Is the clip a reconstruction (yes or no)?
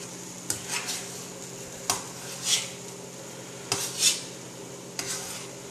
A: no